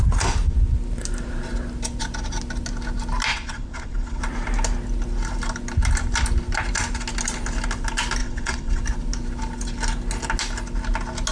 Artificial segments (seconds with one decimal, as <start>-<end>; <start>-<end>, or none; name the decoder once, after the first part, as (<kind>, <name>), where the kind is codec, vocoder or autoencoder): 3.3-4.2 (vocoder, WaveNeXt); 8.2-8.8